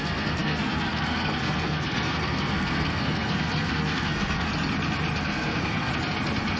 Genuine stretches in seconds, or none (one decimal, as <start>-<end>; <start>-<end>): 4.5-5.2; 5.9-6.6